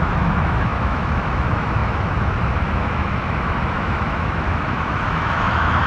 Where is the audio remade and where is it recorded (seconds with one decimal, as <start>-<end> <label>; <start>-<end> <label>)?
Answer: 0.0-5.9 remade